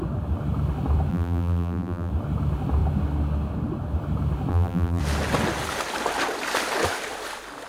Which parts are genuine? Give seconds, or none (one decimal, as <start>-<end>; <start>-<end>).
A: 0.0-1.1; 2.1-4.5; 5.0-7.7